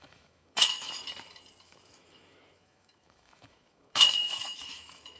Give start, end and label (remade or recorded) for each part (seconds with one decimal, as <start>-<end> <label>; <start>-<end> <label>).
0.0-1.0 remade; 1.0-1.6 recorded; 1.6-5.2 remade